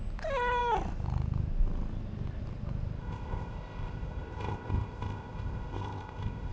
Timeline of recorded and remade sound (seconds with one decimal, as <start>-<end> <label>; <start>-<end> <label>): 0.0-3.0 recorded; 3.0-6.5 remade